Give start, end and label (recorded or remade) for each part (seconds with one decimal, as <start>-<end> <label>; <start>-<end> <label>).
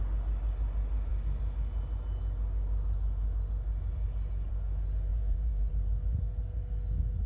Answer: 0.0-5.1 recorded; 5.1-5.7 remade; 5.7-7.3 recorded